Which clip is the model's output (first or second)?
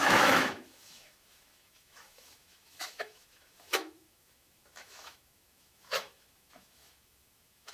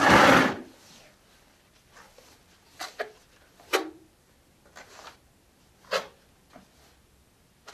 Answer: first